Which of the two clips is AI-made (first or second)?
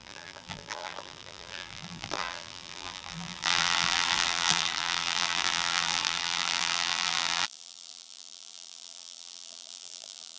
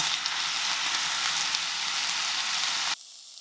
first